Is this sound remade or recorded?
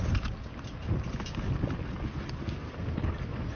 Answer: recorded